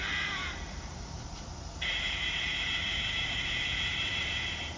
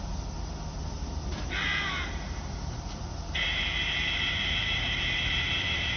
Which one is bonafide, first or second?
second